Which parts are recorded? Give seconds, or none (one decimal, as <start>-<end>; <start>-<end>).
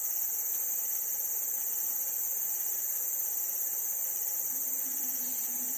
4.0-4.5